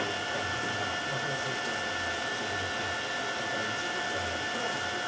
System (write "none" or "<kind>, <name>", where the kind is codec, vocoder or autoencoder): none